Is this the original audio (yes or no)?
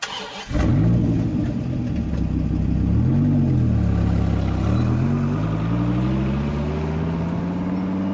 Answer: yes